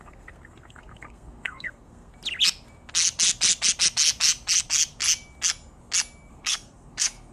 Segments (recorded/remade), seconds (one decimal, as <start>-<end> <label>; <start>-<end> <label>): 0.0-2.1 remade; 2.1-6.3 recorded; 6.3-7.3 remade